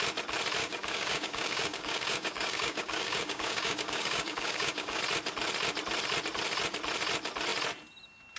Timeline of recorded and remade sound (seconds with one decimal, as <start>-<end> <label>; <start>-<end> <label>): 0.0-0.6 recorded; 0.6-5.0 remade; 5.0-8.4 recorded